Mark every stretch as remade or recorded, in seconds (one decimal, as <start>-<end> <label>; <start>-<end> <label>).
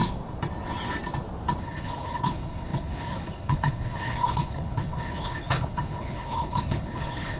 0.0-1.6 recorded; 1.6-7.4 remade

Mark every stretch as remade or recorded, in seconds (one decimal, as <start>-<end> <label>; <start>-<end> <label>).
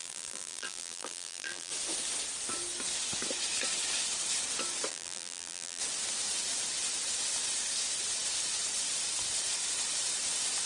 0.0-1.7 remade; 1.7-4.9 recorded; 4.9-5.8 remade; 5.8-10.7 recorded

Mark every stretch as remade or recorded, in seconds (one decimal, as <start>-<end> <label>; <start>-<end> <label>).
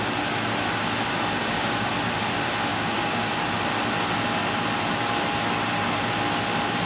0.0-1.4 recorded; 1.4-1.9 remade; 1.9-2.7 recorded; 2.7-3.3 remade; 3.3-6.9 recorded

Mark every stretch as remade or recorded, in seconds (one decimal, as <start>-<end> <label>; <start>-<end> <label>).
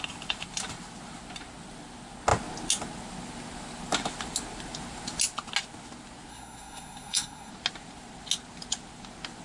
0.0-6.3 recorded; 6.3-7.5 remade; 7.5-9.4 recorded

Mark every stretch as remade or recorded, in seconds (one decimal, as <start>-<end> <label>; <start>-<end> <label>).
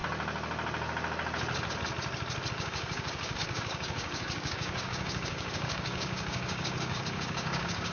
0.0-2.5 recorded; 2.5-7.9 remade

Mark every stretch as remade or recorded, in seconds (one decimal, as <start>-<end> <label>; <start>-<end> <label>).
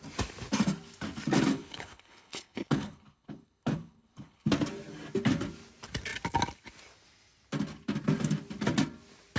0.0-1.5 recorded; 1.5-4.5 remade; 4.5-9.4 recorded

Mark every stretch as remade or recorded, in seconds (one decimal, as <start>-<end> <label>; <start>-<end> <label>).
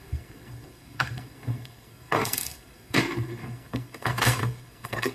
0.0-5.1 remade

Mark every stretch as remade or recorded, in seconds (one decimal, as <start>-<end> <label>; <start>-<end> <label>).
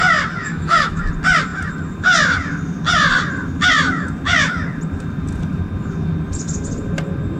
0.0-0.4 recorded; 0.4-1.0 remade; 1.0-7.4 recorded